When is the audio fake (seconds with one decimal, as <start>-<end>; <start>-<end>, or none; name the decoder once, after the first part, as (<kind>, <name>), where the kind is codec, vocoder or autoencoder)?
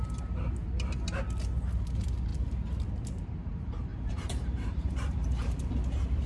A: 3.9-5.7 (vocoder, BigVGAN v2)